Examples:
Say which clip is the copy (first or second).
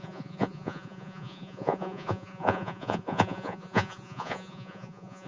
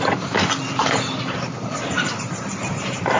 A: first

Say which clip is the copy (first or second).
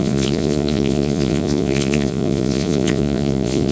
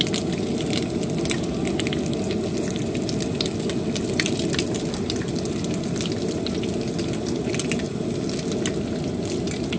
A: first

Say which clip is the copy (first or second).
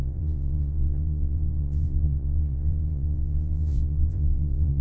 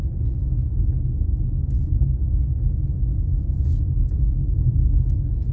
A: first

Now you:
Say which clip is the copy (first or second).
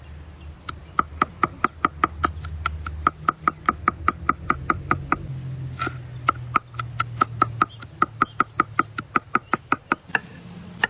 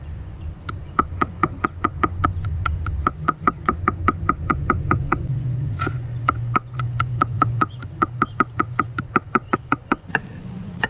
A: second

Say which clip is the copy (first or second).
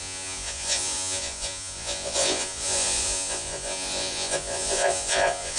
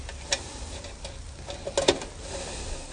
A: first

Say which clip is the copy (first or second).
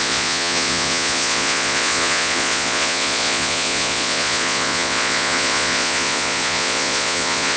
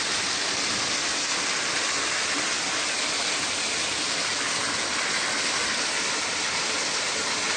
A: first